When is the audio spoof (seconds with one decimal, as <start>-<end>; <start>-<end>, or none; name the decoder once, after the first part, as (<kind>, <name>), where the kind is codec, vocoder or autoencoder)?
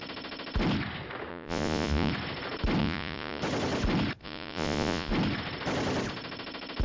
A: 1.3-2.1 (vocoder, Vocos); 2.8-3.4; 4.2-5.1